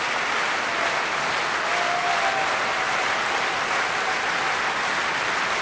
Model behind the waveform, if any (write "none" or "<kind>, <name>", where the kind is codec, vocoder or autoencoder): none